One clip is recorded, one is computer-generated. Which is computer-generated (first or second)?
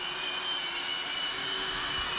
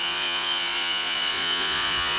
second